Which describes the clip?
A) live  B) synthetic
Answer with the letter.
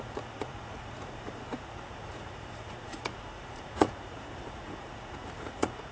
B